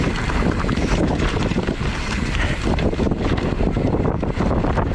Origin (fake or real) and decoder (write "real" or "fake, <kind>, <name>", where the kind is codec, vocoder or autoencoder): real